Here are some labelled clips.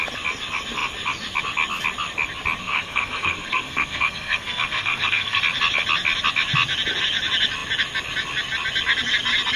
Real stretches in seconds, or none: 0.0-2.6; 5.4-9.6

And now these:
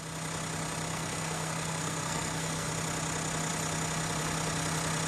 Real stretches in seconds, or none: 0.0-0.9; 2.7-5.1

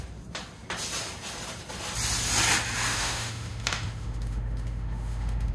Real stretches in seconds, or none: 0.0-2.9

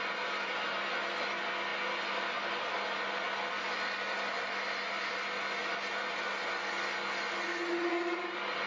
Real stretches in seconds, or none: 0.0-8.7